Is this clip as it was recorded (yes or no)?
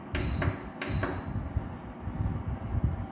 yes